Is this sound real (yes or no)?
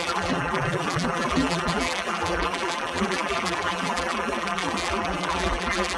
no